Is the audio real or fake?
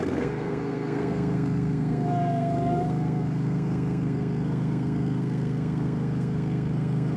fake